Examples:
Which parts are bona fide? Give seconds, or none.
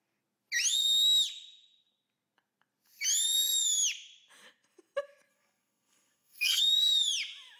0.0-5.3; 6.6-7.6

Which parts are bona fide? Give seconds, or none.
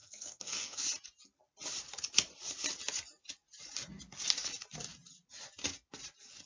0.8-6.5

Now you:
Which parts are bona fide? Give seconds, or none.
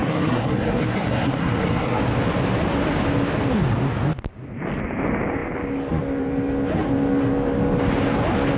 2.0-8.6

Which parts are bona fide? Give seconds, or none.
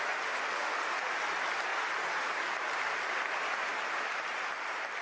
0.0-5.0